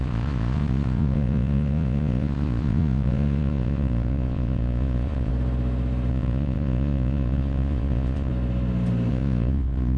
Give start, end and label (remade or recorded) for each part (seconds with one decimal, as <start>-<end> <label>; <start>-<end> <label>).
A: 0.0-5.3 remade; 5.3-6.1 recorded; 6.1-8.3 remade; 8.3-9.1 recorded; 9.1-10.0 remade